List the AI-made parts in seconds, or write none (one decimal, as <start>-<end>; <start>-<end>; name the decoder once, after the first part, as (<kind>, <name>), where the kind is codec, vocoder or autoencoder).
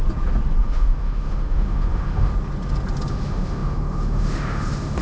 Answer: 0.6-2.3 (autoencoder, DAC-VAE); 3.1-5.0